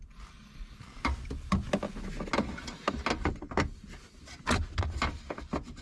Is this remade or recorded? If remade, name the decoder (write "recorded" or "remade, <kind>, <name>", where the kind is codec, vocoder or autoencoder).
recorded